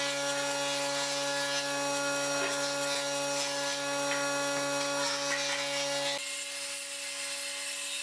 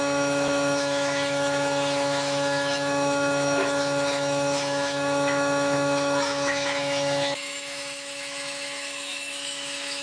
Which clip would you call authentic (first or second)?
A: first